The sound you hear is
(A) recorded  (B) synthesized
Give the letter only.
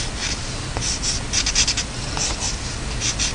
A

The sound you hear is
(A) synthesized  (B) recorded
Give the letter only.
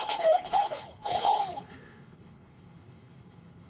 A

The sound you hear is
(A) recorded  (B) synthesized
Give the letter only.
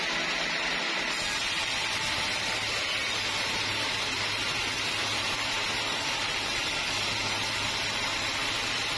A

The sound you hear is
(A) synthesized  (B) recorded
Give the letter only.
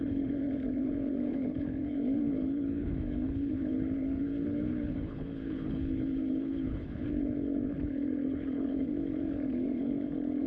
A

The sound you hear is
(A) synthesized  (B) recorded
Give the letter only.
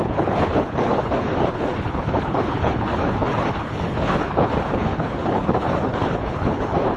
A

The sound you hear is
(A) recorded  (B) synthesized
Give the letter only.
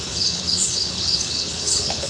B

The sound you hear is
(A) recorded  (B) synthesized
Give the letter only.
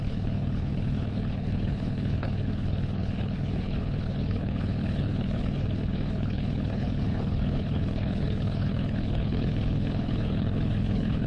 B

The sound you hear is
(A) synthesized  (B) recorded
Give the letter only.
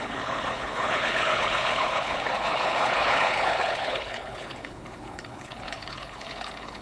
A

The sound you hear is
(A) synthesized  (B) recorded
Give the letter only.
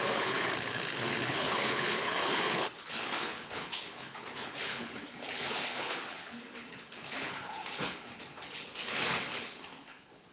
A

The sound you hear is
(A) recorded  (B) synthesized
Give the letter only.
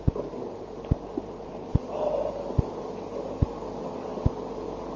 A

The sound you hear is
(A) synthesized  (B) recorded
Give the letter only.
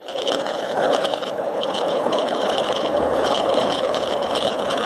A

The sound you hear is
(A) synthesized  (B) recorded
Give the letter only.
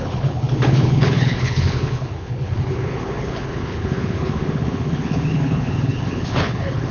A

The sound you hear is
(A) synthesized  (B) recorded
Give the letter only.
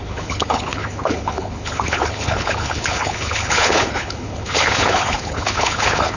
A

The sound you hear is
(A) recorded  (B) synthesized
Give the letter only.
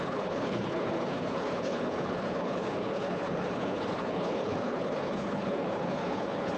B